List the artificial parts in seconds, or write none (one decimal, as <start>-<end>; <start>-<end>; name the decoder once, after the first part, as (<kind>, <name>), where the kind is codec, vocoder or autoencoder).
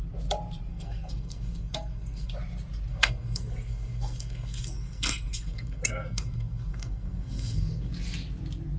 0.7-2.3 (codec, SNAC); 2.9-7.9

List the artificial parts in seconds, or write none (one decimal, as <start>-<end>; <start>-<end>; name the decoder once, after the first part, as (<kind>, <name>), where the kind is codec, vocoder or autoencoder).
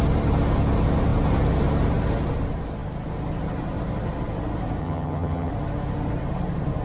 4.8-5.5 (vocoder, HiFi-GAN)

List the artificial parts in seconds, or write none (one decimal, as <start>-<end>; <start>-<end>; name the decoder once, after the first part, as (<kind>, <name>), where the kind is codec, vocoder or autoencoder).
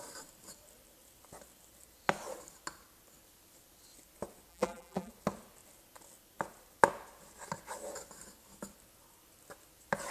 4.5-5.1 (vocoder, BigVGAN v2)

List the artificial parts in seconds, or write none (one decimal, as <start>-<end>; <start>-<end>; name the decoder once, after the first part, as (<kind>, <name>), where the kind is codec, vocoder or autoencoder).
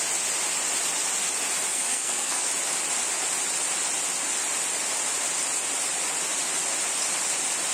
1.7-2.5 (codec, SNAC)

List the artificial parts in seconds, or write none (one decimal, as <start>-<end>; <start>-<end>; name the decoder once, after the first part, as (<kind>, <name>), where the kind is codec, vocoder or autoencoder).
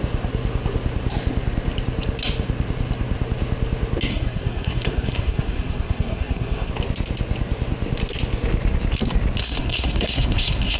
4.1-6.7 (codec, SNAC); 9.4-10.8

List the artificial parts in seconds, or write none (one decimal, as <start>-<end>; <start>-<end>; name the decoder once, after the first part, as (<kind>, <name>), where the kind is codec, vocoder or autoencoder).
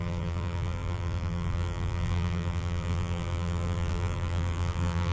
0.0-5.1 (vocoder, BigVGAN v2)